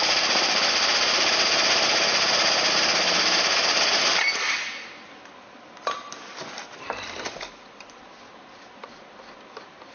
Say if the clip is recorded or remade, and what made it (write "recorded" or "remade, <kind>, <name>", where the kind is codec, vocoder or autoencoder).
recorded